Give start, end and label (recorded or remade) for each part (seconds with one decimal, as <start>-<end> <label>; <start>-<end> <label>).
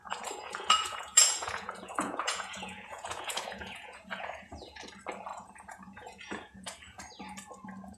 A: 0.0-4.8 remade; 4.8-5.3 recorded; 5.3-7.0 remade; 7.0-8.0 recorded